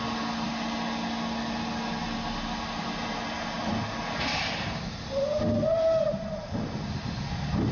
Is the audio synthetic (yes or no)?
no